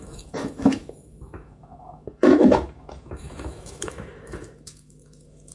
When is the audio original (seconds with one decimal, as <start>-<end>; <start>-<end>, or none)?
none

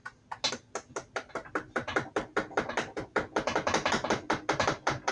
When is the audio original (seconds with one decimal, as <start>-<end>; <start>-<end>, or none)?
0.0-5.1

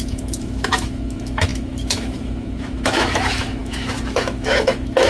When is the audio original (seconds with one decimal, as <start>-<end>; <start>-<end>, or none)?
none